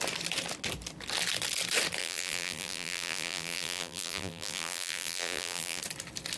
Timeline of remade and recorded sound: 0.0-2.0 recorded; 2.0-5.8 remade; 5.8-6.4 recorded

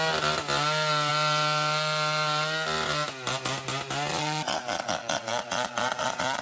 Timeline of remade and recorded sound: 0.0-4.1 recorded; 4.1-6.4 remade

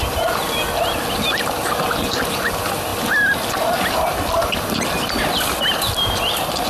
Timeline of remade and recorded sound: 0.0-6.7 recorded

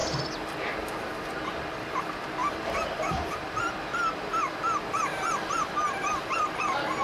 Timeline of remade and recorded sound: 0.0-0.7 remade; 0.7-2.4 recorded; 2.4-6.6 remade; 6.6-7.0 recorded

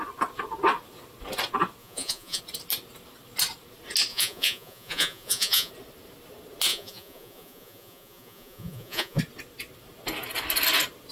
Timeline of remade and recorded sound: 0.0-1.8 recorded; 1.8-2.4 remade; 2.4-4.1 recorded; 4.1-5.7 remade; 5.7-6.7 recorded; 6.7-9.2 remade; 9.2-11.1 recorded

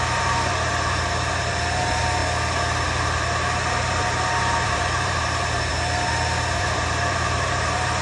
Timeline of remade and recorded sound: 0.0-2.2 remade; 2.2-3.7 recorded; 3.7-5.7 remade; 5.7-6.6 recorded; 6.6-8.0 remade